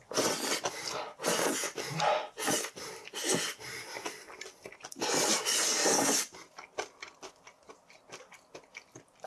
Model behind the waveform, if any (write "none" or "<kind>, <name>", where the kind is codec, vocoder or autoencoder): none